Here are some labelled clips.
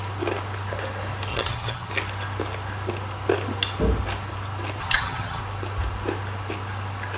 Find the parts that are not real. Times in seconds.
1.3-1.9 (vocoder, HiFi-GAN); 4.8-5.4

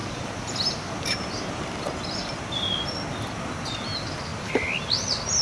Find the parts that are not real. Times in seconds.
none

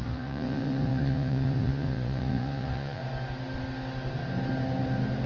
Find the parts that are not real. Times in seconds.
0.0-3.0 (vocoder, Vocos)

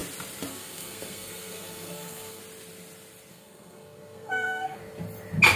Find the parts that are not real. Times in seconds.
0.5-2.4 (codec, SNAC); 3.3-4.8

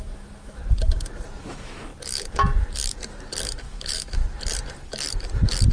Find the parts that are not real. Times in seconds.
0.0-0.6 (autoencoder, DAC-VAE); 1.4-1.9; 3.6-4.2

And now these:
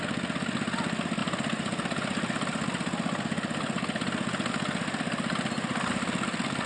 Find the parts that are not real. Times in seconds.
none

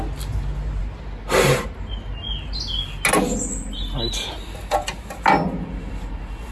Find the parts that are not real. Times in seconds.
none